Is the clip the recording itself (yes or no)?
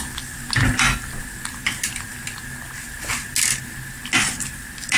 yes